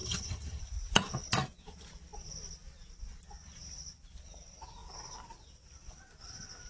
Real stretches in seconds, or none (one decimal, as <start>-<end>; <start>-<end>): 0.6-6.7

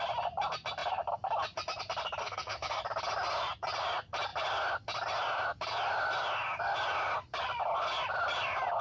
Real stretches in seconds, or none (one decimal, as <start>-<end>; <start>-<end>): 0.0-2.2; 2.8-8.8